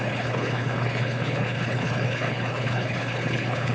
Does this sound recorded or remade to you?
remade